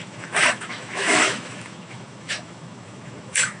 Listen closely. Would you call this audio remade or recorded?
remade